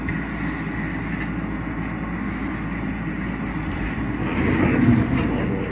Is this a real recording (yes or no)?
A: yes